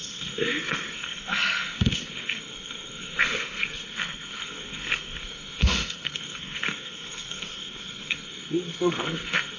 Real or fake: fake